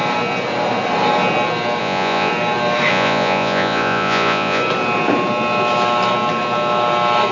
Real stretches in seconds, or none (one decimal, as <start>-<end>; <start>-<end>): 0.0-1.8; 2.3-2.9; 4.6-7.3